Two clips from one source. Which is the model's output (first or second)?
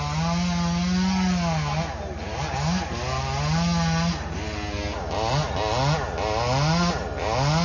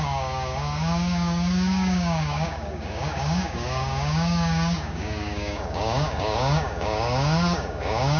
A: second